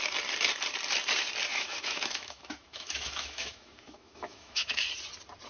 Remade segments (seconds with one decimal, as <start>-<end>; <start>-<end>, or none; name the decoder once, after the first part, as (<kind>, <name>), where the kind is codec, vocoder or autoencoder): 1.5-4.8 (autoencoder, DAC-VAE)